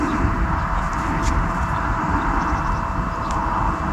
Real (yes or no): yes